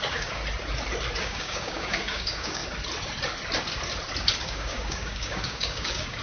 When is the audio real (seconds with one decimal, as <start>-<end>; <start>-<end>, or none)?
0.4-1.2; 2.6-4.4